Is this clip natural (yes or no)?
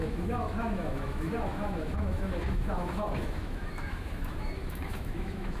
no